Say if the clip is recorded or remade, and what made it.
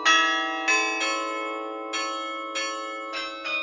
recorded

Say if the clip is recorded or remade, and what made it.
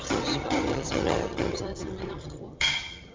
remade, vocoder, HiFi-GAN